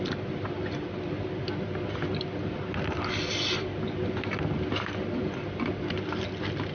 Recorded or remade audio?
recorded